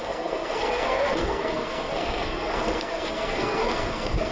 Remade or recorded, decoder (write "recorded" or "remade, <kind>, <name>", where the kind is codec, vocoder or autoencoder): remade, codec, SNAC